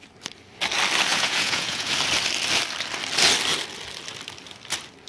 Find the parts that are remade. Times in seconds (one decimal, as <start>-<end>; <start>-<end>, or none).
1.1-1.9